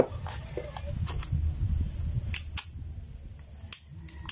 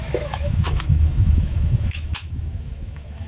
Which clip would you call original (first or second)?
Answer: first